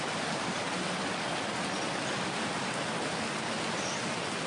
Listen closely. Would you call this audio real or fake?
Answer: real